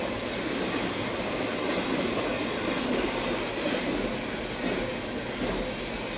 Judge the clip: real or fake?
real